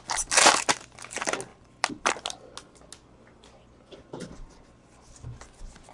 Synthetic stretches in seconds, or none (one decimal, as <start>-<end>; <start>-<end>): 1.5-2.1